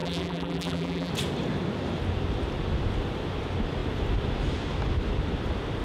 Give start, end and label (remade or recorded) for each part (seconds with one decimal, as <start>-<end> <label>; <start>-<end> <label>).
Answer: 0.0-1.1 remade; 1.1-5.8 recorded